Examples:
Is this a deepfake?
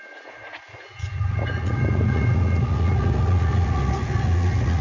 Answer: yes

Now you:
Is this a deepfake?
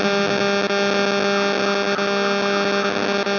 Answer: no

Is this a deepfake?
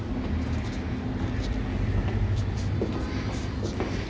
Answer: no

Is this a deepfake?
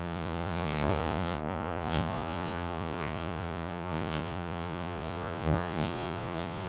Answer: yes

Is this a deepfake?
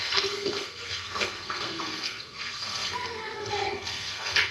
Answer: yes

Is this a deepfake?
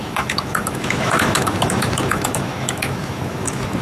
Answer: yes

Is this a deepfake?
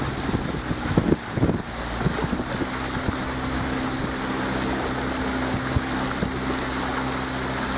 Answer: no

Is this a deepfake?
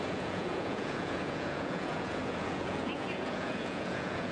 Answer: yes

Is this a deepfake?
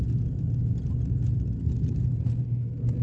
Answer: no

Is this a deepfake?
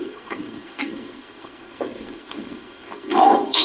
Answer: yes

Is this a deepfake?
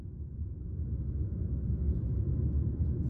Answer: no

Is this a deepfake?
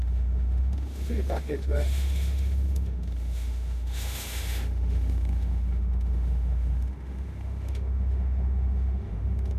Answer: yes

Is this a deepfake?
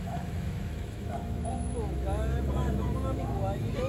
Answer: yes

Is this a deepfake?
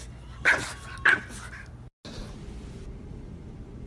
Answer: no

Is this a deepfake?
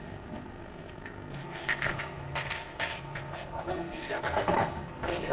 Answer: yes